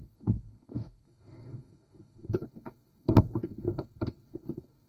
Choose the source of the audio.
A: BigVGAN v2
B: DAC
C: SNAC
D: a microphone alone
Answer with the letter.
B